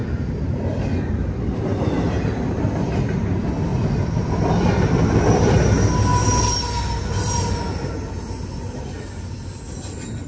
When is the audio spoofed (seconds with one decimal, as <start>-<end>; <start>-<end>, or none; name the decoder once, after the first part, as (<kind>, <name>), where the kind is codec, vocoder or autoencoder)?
none